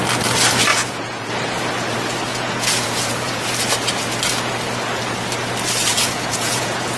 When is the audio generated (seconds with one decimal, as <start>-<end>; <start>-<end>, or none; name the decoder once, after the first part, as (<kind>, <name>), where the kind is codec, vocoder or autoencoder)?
0.7-1.3 (vocoder, Vocos); 2.3-3.5; 5.9-7.0